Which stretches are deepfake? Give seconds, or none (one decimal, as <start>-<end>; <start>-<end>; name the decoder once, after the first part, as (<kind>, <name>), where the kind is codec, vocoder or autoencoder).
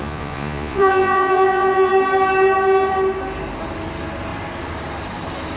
0.0-1.9 (vocoder, Vocos)